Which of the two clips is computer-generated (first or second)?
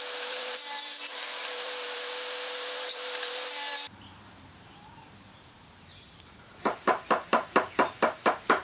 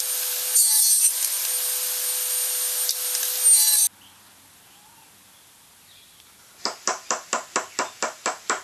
first